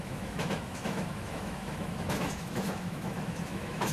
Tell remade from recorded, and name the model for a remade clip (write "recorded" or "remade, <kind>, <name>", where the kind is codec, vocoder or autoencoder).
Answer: remade, autoencoder, DAC-VAE